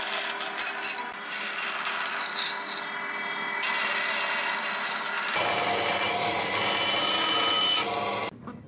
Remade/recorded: recorded